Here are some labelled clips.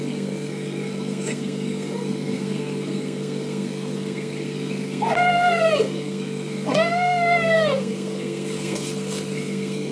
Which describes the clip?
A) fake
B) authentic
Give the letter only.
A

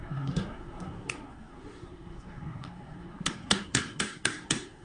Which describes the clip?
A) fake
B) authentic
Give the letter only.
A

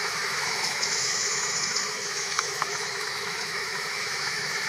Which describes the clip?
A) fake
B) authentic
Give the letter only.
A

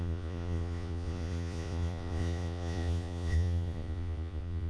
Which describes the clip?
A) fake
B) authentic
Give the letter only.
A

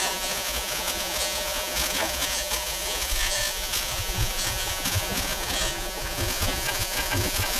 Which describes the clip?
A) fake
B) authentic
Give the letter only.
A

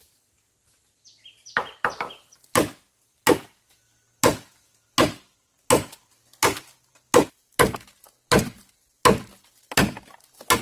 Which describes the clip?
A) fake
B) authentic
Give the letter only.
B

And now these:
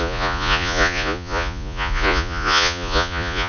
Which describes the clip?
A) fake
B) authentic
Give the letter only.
A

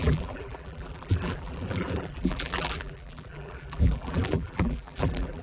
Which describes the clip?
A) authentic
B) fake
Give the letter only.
B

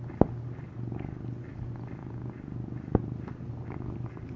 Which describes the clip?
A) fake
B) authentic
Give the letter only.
B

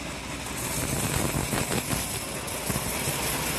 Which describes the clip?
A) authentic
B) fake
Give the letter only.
A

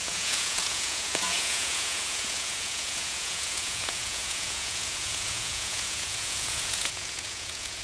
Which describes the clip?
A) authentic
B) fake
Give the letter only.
B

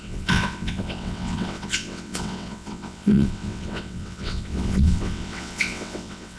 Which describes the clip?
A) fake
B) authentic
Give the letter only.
A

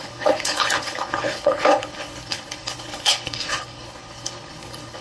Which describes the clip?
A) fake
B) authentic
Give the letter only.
A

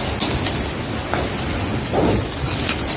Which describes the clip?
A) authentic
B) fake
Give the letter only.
A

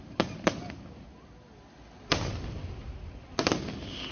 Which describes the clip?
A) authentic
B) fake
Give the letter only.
A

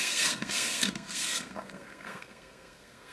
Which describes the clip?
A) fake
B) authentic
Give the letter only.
A